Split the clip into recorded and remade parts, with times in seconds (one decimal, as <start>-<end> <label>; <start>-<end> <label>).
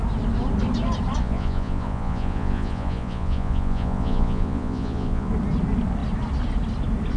0.0-1.2 recorded; 1.2-5.3 remade; 5.3-7.2 recorded